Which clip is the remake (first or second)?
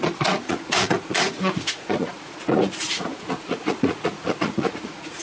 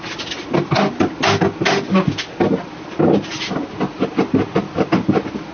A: first